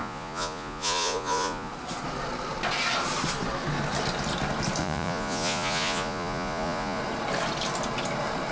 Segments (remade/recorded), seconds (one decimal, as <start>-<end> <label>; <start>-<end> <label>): 0.0-1.7 remade; 1.7-4.8 recorded; 4.8-7.0 remade; 7.0-8.5 recorded